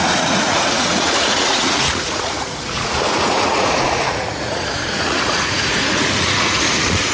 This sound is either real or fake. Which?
fake